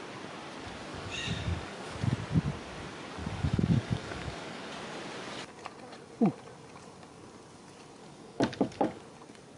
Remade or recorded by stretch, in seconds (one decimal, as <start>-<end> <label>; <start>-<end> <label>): 0.0-0.9 recorded; 0.9-1.9 remade; 1.9-3.2 recorded; 3.2-4.7 remade; 4.7-8.0 recorded; 8.0-9.0 remade; 9.0-9.6 recorded